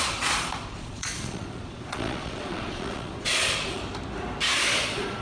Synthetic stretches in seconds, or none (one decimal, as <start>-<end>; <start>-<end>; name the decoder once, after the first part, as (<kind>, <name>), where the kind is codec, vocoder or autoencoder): 0.0-3.8 (vocoder, Vocos); 4.5-5.2